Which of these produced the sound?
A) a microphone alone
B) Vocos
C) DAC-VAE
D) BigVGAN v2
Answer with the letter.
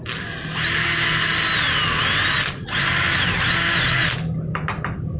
A